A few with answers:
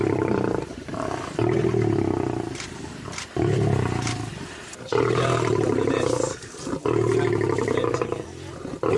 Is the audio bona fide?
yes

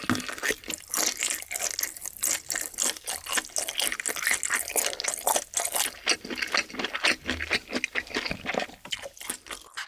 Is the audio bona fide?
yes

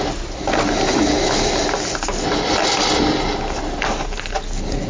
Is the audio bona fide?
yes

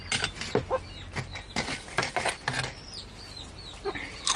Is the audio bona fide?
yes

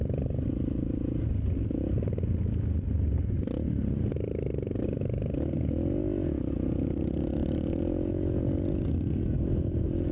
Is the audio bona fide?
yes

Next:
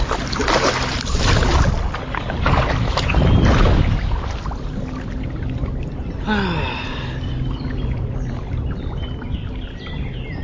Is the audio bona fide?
yes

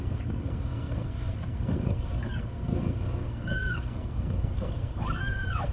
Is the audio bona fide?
no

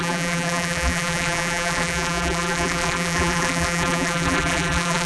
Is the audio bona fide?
no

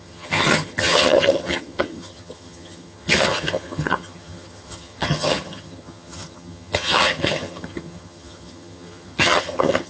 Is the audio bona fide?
no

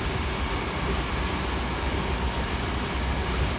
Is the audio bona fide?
yes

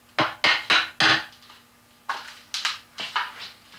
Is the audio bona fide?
yes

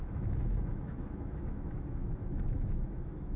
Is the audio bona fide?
no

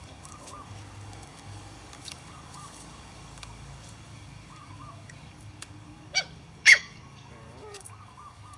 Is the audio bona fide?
no